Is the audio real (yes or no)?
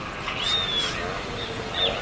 yes